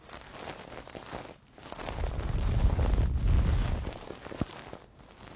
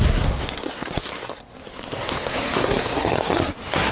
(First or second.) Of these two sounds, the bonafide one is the first